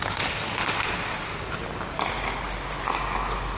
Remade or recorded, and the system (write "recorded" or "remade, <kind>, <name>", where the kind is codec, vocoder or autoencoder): recorded